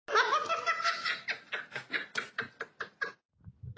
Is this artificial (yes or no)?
no